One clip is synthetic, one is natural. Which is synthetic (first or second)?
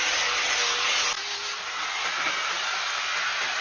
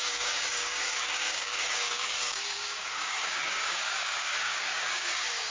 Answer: second